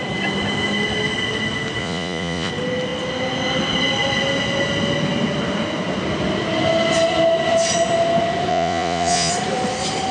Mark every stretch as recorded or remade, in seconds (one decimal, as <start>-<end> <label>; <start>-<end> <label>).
0.0-1.8 recorded; 1.8-2.5 remade; 2.5-8.5 recorded; 8.5-9.3 remade; 9.3-10.1 recorded